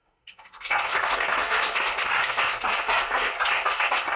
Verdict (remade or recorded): remade